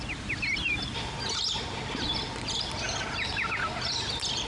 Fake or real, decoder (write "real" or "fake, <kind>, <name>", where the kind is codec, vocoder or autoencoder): real